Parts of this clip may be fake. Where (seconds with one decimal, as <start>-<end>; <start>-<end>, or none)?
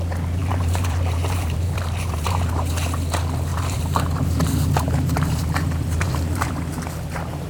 0.4-2.7; 3.5-6.5